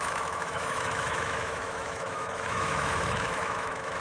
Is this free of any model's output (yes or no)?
no